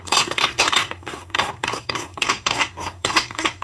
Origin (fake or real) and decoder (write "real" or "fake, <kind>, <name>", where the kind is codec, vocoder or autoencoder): fake, codec, SNAC